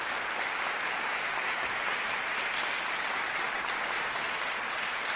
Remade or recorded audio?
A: recorded